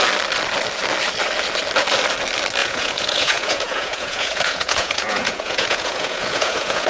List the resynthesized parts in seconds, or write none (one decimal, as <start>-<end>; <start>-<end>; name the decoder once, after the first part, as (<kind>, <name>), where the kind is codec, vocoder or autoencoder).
2.6-6.9 (vocoder, Vocos)